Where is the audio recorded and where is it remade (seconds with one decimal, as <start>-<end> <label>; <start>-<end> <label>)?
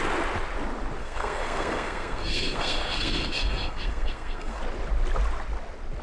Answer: 0.0-1.0 recorded; 1.0-4.6 remade; 4.6-6.0 recorded